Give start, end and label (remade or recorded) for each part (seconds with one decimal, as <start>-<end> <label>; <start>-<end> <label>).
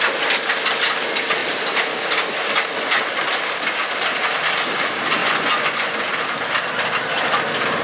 0.0-5.2 recorded; 5.2-6.0 remade; 6.0-7.8 recorded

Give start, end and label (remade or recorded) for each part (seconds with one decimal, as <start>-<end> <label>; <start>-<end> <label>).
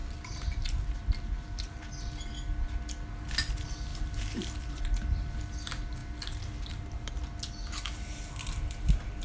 0.0-1.9 remade; 1.9-3.9 recorded; 3.9-4.8 remade; 4.8-9.2 recorded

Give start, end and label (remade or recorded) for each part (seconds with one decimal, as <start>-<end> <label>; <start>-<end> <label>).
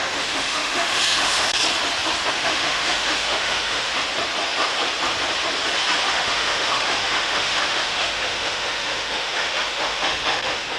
0.0-1.6 remade; 1.6-2.3 recorded; 2.3-3.9 remade; 3.9-6.1 recorded; 6.1-10.8 remade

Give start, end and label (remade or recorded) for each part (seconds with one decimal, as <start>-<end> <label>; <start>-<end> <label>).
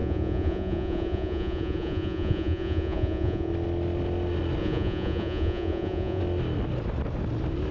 0.0-3.5 remade; 3.5-4.6 recorded; 4.6-6.2 remade; 6.2-7.7 recorded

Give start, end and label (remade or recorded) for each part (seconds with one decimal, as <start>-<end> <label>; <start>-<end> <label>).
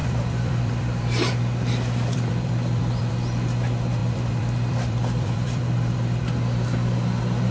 0.0-3.1 remade; 3.1-4.0 recorded; 4.0-6.2 remade; 6.2-7.5 recorded